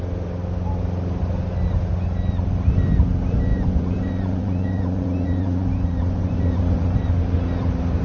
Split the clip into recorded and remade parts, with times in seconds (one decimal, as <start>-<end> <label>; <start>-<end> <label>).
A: 0.0-3.5 recorded; 3.5-7.1 remade; 7.1-8.0 recorded